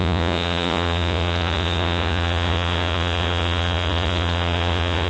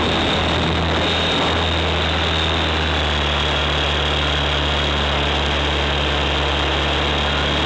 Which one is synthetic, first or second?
first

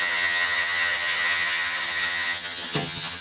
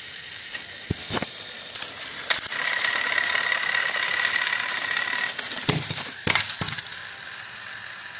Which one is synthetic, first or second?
first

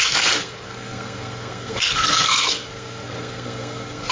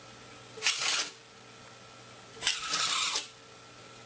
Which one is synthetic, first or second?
first